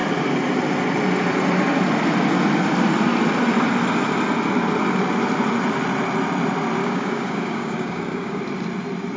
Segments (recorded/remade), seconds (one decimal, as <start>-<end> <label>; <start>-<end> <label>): 0.0-6.8 recorded; 6.8-8.4 remade; 8.4-9.2 recorded